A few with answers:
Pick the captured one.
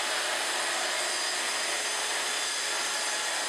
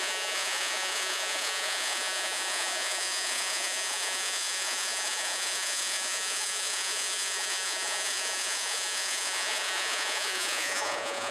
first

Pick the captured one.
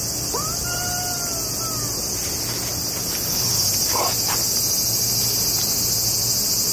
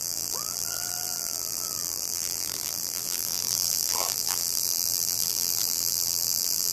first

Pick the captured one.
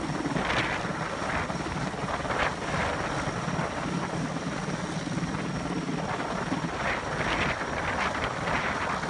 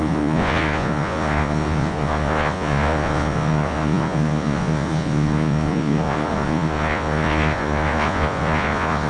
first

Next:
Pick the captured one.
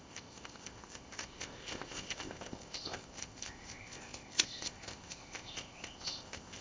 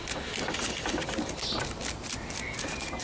second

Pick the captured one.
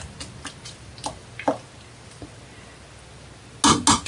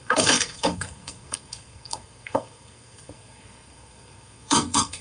first